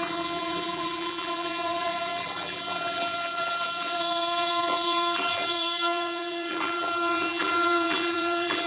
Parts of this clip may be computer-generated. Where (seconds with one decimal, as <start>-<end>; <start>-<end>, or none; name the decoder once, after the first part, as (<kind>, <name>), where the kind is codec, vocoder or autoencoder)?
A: 0.0-8.7 (vocoder, BigVGAN v2)